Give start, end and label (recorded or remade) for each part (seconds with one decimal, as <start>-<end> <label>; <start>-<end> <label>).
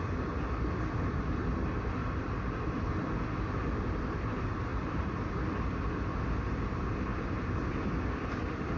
0.0-2.0 recorded; 2.0-2.9 remade; 2.9-4.7 recorded; 4.7-5.3 remade; 5.3-7.1 recorded; 7.1-7.6 remade; 7.6-8.8 recorded